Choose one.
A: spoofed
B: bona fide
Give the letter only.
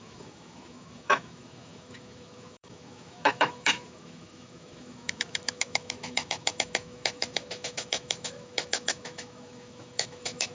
A